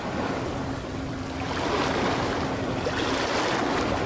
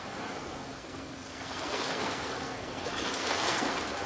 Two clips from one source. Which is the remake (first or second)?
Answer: second